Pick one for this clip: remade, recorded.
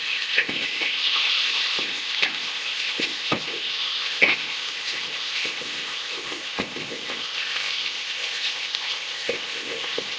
remade